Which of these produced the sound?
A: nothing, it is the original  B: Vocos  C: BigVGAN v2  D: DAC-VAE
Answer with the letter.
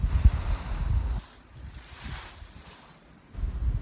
A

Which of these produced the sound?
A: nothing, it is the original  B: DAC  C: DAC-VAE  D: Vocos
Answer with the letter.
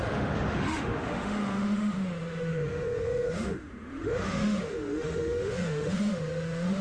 C